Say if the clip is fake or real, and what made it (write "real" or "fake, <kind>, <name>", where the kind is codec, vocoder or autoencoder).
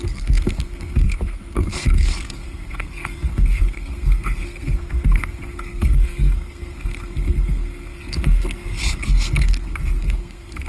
fake, codec, SNAC